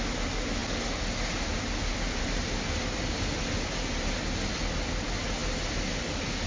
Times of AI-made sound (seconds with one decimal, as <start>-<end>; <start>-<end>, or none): none